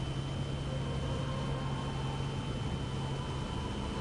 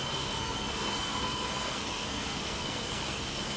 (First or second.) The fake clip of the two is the second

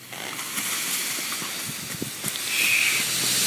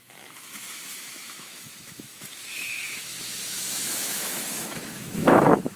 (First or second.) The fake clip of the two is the second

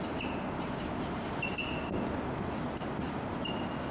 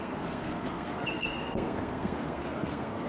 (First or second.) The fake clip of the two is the second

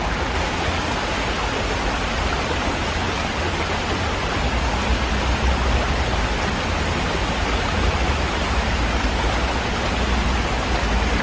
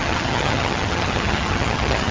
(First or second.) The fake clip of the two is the second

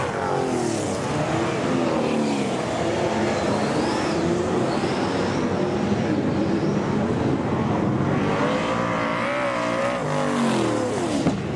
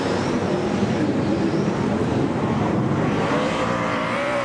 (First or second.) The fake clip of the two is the second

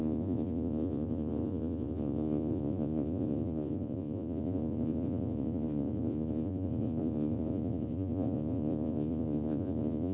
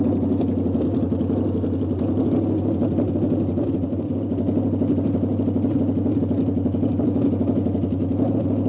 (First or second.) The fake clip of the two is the first